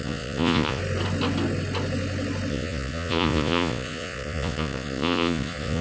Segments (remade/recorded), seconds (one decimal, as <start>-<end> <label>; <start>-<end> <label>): 0.0-0.8 remade; 0.8-2.5 recorded; 2.5-5.8 remade